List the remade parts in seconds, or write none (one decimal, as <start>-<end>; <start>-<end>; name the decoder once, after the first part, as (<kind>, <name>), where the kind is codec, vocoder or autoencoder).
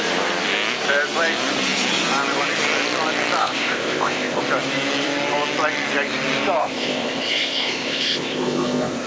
3.4-4.4 (codec, ZipCodec); 6.6-9.1